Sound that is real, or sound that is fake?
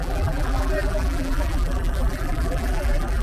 fake